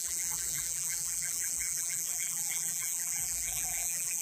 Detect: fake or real fake